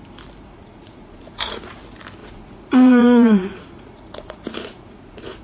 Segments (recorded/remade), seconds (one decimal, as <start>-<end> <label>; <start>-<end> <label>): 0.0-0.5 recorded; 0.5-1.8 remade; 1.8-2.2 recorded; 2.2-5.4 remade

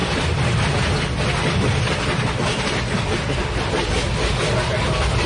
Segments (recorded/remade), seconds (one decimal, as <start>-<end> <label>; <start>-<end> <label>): 0.0-5.3 recorded

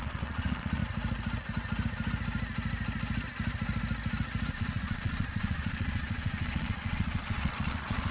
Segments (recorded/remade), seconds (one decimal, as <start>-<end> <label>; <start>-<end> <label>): 0.0-0.8 remade; 0.8-4.5 recorded; 4.5-8.1 remade

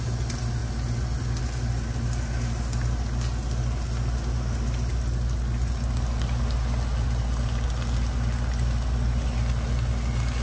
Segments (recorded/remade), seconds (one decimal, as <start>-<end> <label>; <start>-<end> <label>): 0.0-10.4 recorded

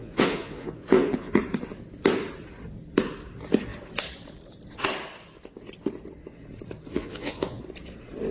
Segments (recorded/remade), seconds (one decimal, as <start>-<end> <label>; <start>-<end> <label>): 0.0-1.4 remade; 1.4-6.9 recorded; 6.9-7.6 remade; 7.6-8.3 recorded

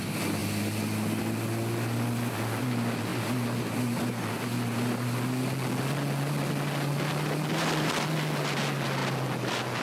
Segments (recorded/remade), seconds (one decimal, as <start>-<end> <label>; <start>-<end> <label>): 0.0-9.8 recorded

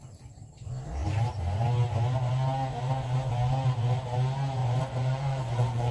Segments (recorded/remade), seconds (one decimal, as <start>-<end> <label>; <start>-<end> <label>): 0.0-4.6 recorded; 4.6-5.9 remade

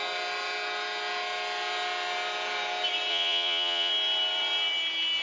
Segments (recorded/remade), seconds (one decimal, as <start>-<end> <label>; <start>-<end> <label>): 0.0-3.1 recorded; 3.1-3.9 remade; 3.9-5.2 recorded